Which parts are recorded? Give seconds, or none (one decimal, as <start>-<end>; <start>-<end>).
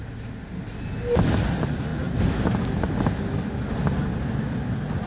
0.0-5.1